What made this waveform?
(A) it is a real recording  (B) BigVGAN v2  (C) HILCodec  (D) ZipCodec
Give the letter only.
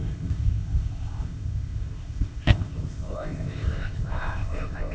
D